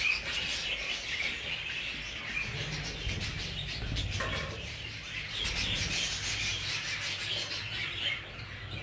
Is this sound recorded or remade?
recorded